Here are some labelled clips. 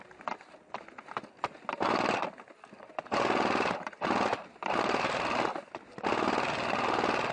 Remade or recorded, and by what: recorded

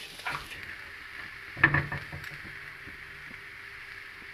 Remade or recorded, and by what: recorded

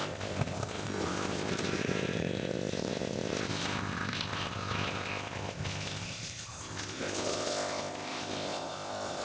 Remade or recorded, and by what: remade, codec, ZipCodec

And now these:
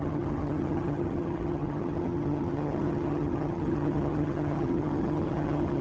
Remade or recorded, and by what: remade, vocoder, HiFi-GAN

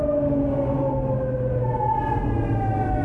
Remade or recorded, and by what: recorded